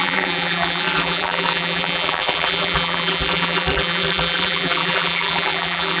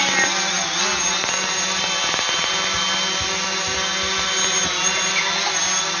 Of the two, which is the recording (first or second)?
second